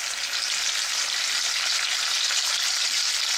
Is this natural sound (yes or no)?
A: yes